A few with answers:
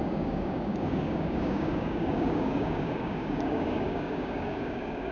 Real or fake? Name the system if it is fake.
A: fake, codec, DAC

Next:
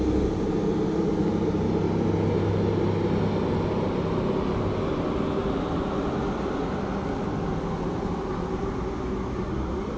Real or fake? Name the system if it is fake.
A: real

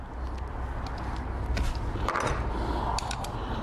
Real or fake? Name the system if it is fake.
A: real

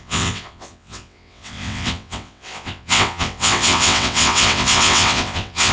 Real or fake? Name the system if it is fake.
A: fake, vocoder, WaveNeXt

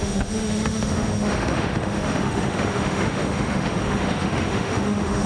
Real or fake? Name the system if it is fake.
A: fake, autoencoder, DAC-VAE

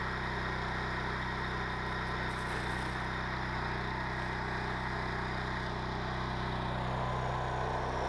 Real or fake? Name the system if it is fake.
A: real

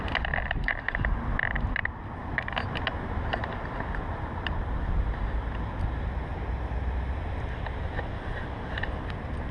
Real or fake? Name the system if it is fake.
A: real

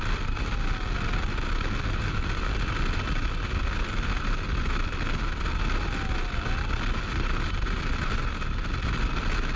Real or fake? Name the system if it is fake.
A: real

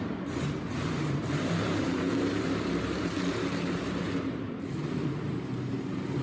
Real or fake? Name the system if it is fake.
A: fake, vocoder, BigVGAN v2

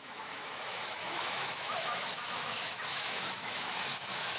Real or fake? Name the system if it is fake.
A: fake, autoencoder, DAC-VAE